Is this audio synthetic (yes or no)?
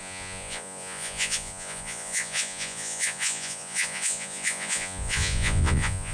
yes